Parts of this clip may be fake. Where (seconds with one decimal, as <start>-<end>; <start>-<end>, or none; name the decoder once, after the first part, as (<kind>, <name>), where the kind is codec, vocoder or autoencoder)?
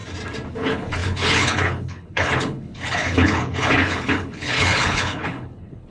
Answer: 0.5-5.9 (codec, HILCodec)